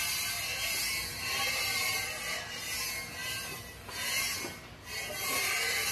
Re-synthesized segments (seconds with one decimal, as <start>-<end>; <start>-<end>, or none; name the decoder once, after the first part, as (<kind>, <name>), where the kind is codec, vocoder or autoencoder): 1.1-2.6 (vocoder, BigVGAN v2)